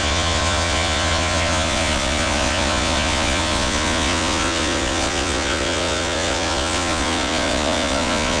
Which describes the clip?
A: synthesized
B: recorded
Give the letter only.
A